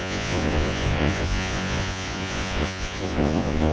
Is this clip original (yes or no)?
no